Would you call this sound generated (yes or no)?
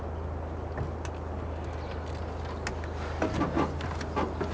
no